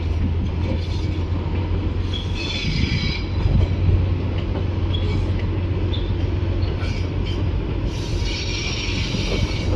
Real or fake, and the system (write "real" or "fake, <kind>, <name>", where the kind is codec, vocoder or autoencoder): real